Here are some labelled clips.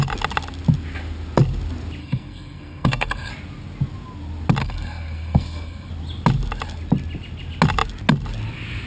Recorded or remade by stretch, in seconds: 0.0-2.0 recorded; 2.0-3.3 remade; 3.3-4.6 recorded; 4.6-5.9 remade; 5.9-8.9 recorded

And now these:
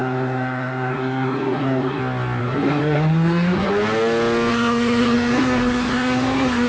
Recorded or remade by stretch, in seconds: 0.0-2.0 remade; 2.0-2.4 recorded; 2.4-3.7 remade; 3.7-4.5 recorded; 4.5-6.7 remade